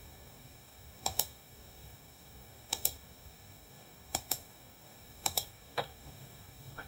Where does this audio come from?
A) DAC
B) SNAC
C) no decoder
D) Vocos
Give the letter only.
A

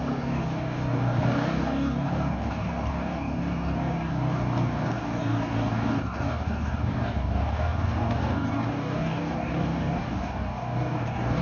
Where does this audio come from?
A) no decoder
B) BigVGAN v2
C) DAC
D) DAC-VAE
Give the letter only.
C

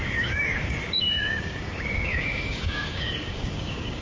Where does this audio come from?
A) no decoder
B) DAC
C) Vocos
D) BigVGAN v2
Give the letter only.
B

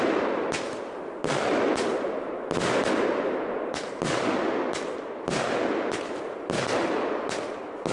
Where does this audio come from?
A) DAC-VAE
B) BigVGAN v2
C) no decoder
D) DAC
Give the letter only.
C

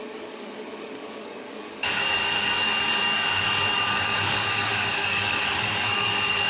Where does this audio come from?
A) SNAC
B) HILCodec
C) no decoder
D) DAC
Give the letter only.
D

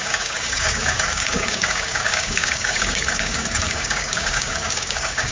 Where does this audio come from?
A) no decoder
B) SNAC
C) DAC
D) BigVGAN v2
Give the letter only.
C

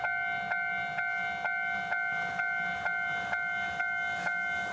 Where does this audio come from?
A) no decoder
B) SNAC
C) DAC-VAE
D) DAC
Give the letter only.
A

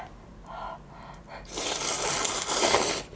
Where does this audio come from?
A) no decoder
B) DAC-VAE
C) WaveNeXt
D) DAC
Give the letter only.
A